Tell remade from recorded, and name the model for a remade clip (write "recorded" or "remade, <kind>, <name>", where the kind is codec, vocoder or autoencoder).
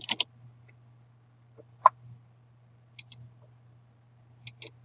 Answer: recorded